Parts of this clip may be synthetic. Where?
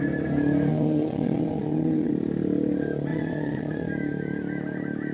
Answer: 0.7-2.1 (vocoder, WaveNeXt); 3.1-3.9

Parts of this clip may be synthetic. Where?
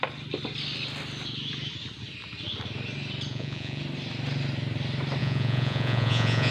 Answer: 3.3-3.8 (vocoder, Vocos); 5.2-6.5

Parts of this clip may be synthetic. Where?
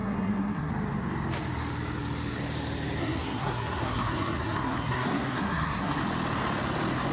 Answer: 0.0-0.7 (codec, SNAC); 3.0-6.0